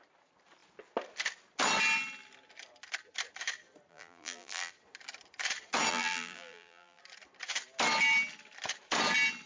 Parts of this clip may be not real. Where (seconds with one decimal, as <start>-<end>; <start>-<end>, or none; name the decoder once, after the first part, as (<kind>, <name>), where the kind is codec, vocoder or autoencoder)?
3.9-4.7 (vocoder, BigVGAN v2); 5.9-7.0